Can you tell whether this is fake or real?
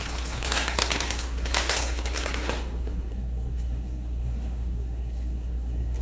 fake